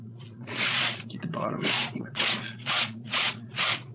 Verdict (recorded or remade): remade